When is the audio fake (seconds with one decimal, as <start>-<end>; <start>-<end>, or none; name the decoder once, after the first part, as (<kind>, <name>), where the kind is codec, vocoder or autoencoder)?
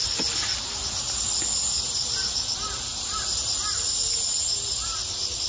none